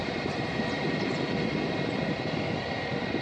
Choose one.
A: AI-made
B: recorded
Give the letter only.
B